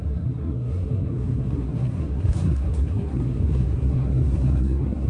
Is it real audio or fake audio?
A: fake